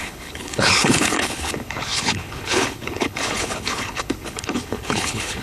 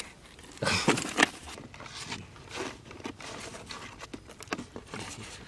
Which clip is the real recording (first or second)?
second